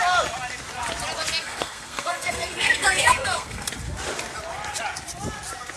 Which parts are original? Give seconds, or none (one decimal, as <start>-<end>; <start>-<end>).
0.0-1.4; 3.7-5.8